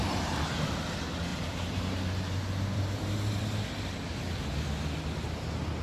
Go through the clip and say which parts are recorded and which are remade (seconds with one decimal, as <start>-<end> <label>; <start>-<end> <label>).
0.0-0.7 remade; 0.7-1.3 recorded; 1.3-3.4 remade; 3.4-5.8 recorded